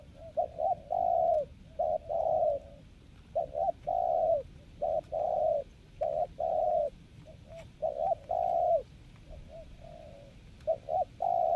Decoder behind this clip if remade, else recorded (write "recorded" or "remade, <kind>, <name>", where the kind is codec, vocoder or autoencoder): remade, vocoder, BigVGAN v2